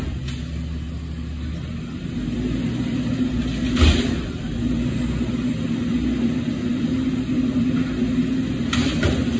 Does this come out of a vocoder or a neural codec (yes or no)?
no